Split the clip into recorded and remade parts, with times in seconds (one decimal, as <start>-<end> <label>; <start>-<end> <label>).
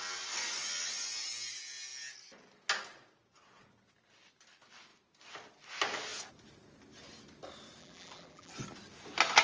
0.0-7.8 recorded; 7.8-8.5 remade; 8.5-9.4 recorded